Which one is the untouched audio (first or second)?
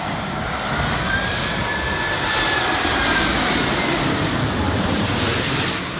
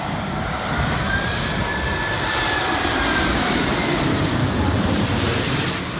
first